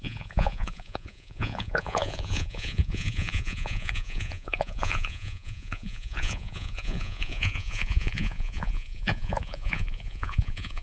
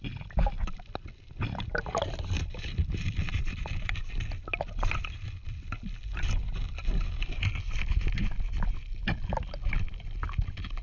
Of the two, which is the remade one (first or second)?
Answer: first